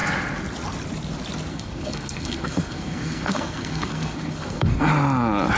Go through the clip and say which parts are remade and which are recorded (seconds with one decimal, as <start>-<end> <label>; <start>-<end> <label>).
0.0-1.5 recorded; 1.5-4.9 remade; 4.9-5.6 recorded